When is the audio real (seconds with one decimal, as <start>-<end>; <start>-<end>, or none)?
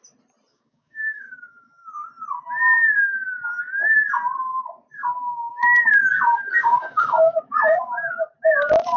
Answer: 0.0-0.5; 2.1-5.0; 5.5-6.6; 8.1-9.0